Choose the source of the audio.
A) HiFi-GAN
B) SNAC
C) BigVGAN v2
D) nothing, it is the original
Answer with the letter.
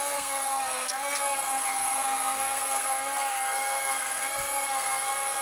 B